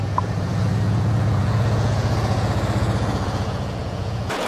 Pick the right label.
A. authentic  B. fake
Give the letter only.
B